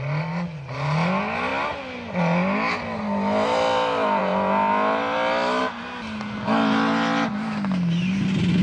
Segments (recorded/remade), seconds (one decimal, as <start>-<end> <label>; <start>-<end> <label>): 0.0-8.6 recorded